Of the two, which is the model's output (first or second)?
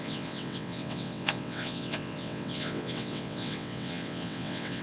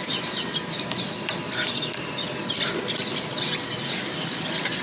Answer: first